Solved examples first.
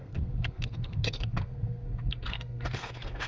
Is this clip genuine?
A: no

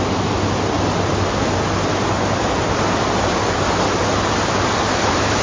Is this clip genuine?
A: yes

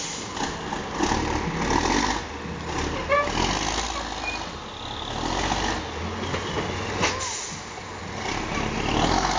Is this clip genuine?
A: yes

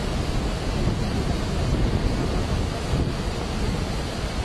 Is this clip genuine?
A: yes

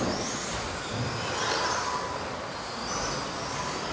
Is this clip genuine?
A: yes